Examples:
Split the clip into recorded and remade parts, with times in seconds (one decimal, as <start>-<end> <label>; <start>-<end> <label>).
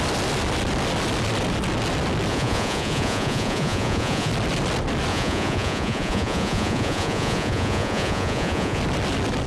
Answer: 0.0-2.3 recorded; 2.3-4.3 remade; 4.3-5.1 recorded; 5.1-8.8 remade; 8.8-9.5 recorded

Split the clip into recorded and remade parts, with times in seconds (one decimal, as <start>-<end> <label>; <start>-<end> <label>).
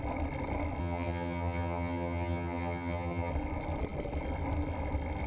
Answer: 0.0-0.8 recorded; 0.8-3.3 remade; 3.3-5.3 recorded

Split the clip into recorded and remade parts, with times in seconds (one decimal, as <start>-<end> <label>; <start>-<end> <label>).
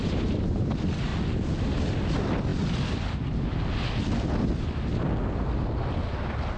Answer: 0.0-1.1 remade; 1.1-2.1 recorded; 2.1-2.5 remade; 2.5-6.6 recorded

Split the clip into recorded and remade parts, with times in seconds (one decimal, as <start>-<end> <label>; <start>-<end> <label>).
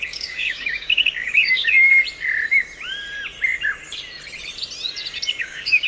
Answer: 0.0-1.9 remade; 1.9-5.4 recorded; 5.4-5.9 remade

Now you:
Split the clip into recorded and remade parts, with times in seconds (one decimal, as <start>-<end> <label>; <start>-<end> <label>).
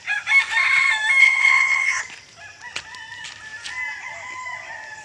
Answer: 0.0-1.2 recorded; 1.2-2.0 remade; 2.0-5.0 recorded